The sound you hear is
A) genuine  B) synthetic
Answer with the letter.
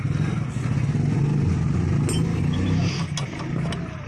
A